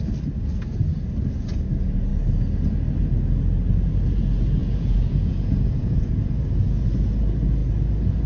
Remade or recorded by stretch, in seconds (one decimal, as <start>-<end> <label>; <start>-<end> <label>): 0.0-4.6 recorded; 4.6-6.1 remade; 6.1-8.3 recorded